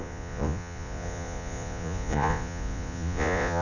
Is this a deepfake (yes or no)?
yes